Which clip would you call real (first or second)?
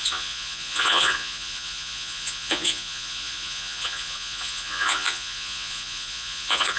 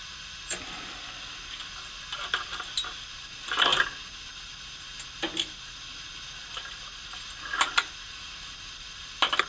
second